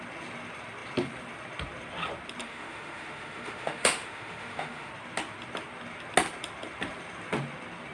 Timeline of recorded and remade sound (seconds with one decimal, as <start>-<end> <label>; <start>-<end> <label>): 0.0-2.4 recorded; 2.4-4.9 remade; 4.9-7.9 recorded

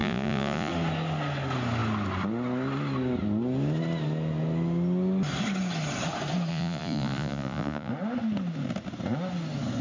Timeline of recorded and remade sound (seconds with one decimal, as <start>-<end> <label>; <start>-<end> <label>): 0.0-0.7 remade; 0.7-6.5 recorded; 6.5-7.9 remade; 7.9-9.8 recorded

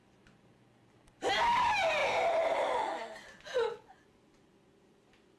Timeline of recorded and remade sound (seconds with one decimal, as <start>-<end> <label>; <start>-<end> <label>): 0.0-2.0 recorded; 2.0-2.7 remade; 2.7-5.4 recorded

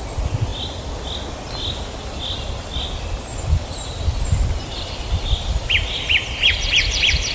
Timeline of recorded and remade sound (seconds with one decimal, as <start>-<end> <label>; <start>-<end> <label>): 0.0-3.3 recorded; 3.3-7.3 remade

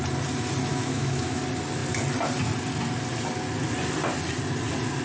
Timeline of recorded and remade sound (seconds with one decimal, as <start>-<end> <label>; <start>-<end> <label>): 0.0-0.7 recorded; 0.7-1.4 remade; 1.4-5.0 recorded

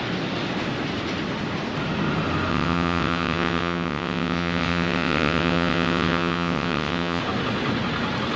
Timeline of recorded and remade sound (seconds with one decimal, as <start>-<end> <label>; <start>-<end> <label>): 0.0-2.5 recorded; 2.5-7.2 remade; 7.2-8.4 recorded

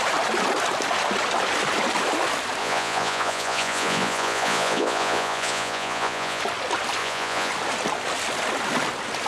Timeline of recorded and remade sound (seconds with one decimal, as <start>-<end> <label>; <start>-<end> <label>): 0.0-2.6 recorded; 2.6-6.4 remade; 6.4-7.0 recorded; 7.0-7.5 remade; 7.5-9.3 recorded

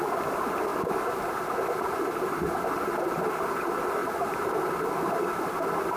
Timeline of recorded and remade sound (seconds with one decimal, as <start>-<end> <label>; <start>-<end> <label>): 0.0-4.0 recorded; 4.0-4.7 remade; 4.7-6.0 recorded